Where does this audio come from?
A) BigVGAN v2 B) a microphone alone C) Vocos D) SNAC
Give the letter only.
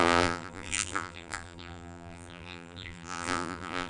A